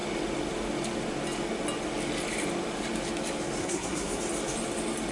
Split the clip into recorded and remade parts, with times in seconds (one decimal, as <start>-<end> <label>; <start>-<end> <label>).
0.0-3.6 recorded; 3.6-4.2 remade; 4.2-5.1 recorded